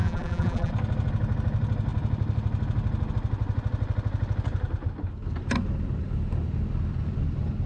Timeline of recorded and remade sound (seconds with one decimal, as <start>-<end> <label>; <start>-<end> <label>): 0.0-0.7 remade; 0.7-7.7 recorded

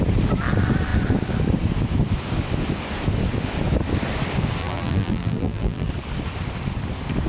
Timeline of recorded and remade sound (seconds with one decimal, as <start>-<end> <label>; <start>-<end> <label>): 0.0-4.6 recorded; 4.6-5.9 remade; 5.9-7.3 recorded

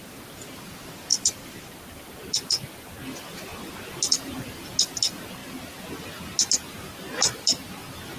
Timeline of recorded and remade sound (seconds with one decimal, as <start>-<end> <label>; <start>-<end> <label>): 0.0-1.1 recorded; 1.1-2.3 remade; 2.3-8.2 recorded